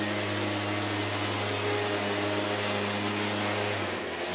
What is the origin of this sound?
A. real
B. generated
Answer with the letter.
A